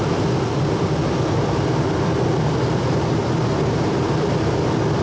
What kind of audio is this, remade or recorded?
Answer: recorded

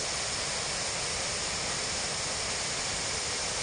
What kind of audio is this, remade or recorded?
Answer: recorded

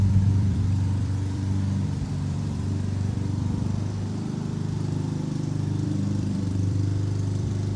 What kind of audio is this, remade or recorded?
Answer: remade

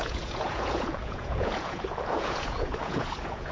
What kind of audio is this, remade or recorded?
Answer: remade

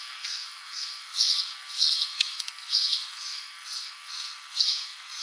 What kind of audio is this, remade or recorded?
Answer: remade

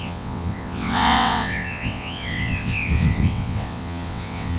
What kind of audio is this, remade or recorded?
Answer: remade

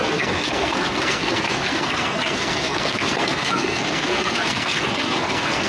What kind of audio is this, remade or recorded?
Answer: remade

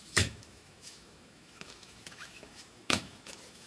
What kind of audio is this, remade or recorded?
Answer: remade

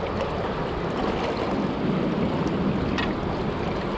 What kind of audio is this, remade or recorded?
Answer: recorded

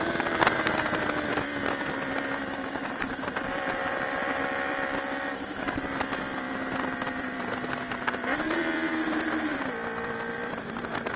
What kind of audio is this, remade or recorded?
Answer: remade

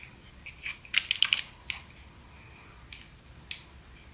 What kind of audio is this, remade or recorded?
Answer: recorded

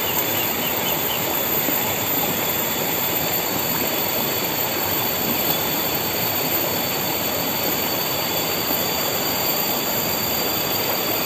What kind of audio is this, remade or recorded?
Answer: remade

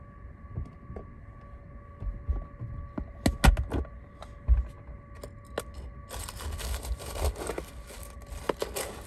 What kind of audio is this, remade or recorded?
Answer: recorded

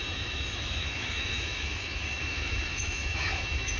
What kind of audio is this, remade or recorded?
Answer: remade